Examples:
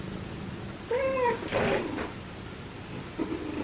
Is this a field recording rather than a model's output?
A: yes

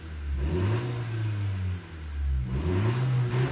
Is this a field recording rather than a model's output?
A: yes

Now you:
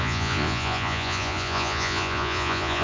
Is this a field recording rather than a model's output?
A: no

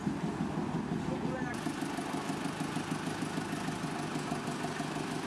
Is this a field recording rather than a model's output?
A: yes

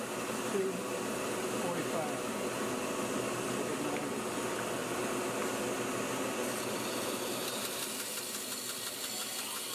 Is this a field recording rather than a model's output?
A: yes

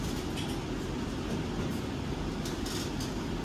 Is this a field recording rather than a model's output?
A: yes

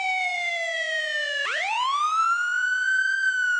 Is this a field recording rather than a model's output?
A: no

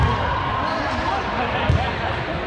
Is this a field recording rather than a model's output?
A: yes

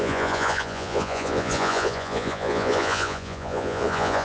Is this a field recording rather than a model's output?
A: no